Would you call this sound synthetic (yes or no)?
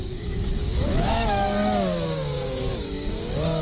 yes